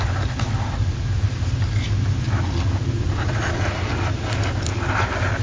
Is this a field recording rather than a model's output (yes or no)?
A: yes